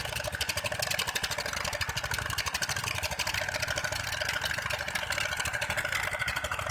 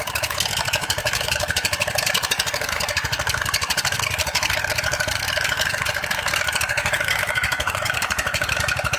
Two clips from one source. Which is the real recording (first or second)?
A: first